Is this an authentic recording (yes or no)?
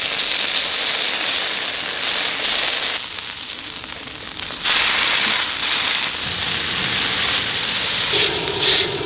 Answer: yes